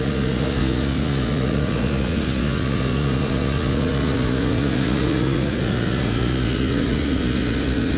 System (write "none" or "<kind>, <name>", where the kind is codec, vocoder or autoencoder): vocoder, Vocos